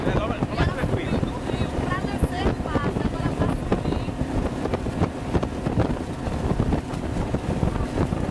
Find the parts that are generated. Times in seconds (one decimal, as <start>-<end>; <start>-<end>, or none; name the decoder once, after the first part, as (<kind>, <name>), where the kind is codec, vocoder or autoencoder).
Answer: 0.0-8.3 (vocoder, BigVGAN v2)